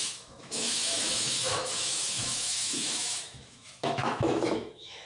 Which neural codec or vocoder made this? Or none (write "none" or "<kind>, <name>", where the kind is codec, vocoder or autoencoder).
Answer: autoencoder, DAC-VAE